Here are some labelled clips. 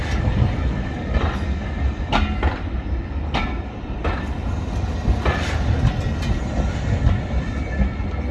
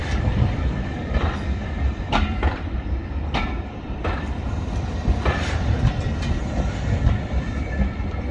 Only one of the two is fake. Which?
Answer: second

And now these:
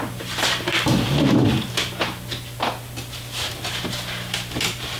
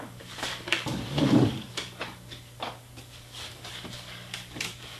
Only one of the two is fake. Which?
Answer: second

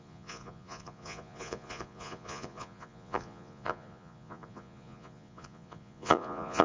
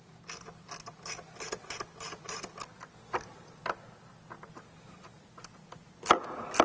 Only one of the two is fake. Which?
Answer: first